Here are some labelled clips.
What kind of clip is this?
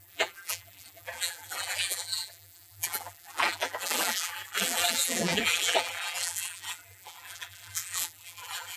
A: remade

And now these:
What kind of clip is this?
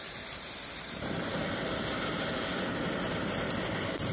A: remade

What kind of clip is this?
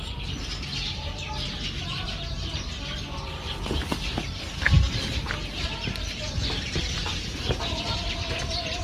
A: remade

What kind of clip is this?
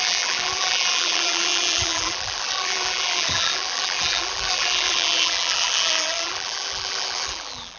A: remade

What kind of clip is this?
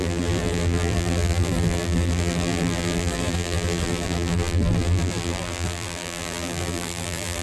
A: remade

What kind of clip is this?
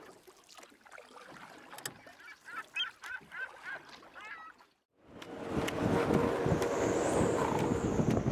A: recorded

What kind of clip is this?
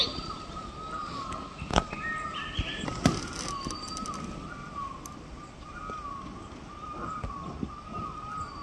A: recorded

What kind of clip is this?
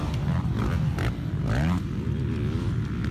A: recorded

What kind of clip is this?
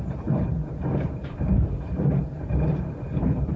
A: remade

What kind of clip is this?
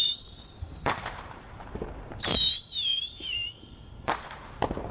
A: remade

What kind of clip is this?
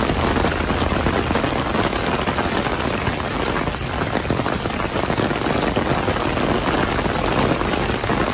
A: recorded